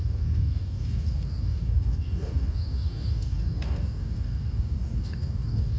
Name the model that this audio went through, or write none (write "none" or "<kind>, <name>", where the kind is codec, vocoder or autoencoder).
codec, DAC